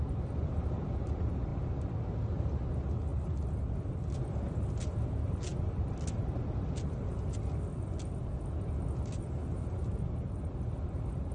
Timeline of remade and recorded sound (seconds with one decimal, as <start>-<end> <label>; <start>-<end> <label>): 0.0-11.3 recorded